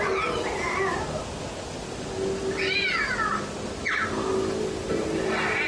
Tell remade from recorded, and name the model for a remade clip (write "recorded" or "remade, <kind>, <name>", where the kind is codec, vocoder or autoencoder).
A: recorded